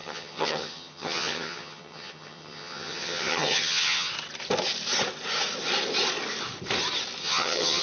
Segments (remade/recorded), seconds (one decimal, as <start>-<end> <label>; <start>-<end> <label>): 0.0-4.1 remade; 4.1-7.2 recorded; 7.2-7.8 remade